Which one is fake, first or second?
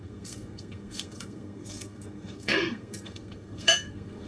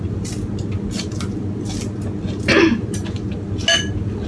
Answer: first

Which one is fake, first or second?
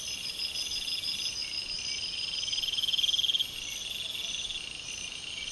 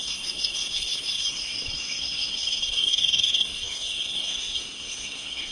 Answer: second